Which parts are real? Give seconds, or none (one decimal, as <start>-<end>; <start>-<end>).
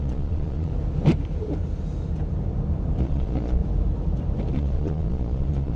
0.7-3.0; 3.6-4.5